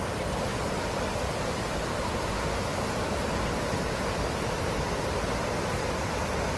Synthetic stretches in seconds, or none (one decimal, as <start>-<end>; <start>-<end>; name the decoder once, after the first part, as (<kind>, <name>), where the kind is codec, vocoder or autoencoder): 0.5-2.1 (vocoder, BigVGAN v2)